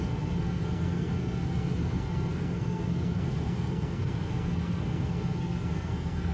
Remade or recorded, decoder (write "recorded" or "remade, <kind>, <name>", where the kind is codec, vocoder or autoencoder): remade, codec, SNAC